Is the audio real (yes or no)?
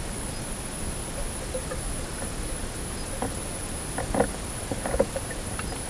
yes